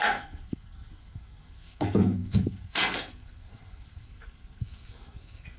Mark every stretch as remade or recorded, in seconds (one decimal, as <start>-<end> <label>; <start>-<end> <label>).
0.0-5.6 remade

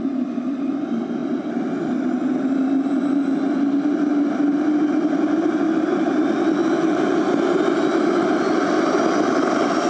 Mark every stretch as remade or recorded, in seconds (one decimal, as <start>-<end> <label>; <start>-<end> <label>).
0.0-9.9 recorded

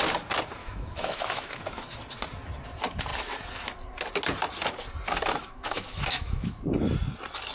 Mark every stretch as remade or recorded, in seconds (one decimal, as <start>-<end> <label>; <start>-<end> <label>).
0.0-0.6 recorded; 0.6-1.6 remade; 1.6-5.4 recorded; 5.4-6.6 remade; 6.6-7.5 recorded

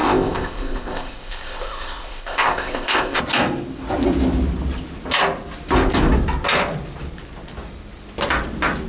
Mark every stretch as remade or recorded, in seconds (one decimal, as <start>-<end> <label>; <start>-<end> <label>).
0.0-3.2 remade; 3.2-8.9 recorded

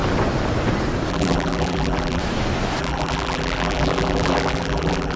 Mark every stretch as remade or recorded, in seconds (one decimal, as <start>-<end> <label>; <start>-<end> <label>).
0.0-1.1 recorded; 1.1-2.2 remade; 2.2-2.8 recorded; 2.8-5.2 remade